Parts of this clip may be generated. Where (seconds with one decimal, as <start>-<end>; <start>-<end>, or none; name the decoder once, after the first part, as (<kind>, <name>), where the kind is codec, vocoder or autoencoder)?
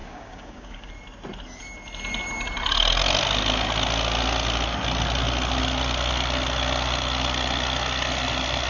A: 0.0-0.9 (codec, DAC)